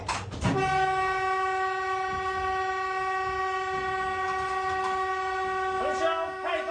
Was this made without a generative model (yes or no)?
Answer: yes